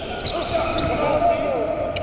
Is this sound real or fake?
real